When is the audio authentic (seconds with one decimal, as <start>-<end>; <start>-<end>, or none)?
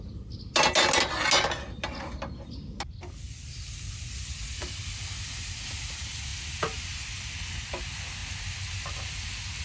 0.0-9.6